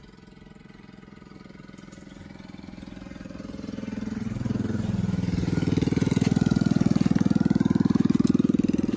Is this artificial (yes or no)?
yes